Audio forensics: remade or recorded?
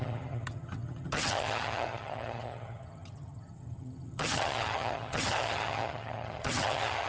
remade